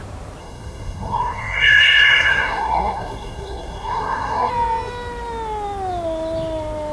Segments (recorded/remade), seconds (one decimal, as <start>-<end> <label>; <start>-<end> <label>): 0.0-0.4 recorded; 0.4-4.5 remade; 4.5-6.9 recorded